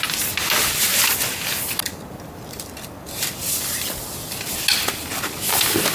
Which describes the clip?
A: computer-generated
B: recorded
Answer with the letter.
B